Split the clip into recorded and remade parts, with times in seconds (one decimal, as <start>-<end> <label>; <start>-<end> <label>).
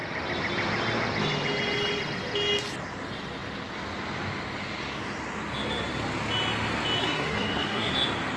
0.0-7.0 recorded; 7.0-7.9 remade; 7.9-8.4 recorded